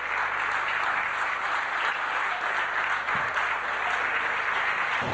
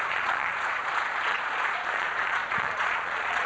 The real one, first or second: first